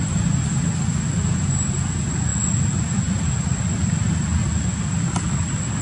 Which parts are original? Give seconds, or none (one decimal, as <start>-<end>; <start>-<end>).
0.0-5.8